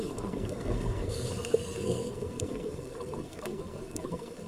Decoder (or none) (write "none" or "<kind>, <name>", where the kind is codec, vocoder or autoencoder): codec, SNAC